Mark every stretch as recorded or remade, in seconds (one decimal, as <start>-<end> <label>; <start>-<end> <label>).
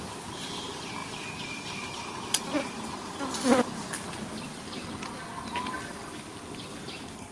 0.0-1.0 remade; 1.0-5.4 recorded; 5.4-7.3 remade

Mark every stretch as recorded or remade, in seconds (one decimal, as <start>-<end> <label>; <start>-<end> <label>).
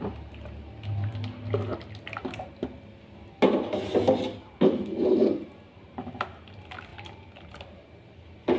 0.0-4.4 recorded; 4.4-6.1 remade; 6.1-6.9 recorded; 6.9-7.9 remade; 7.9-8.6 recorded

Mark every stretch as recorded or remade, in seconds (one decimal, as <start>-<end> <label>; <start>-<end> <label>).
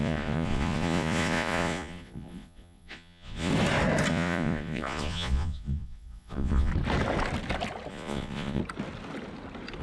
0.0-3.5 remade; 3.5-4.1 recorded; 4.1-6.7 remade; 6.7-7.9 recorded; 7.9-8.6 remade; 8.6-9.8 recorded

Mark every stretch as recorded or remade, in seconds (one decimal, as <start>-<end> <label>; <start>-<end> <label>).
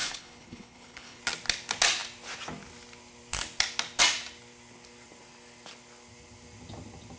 0.0-1.2 remade; 1.2-7.2 recorded